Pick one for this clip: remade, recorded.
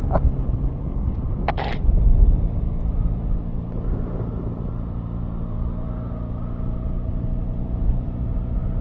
remade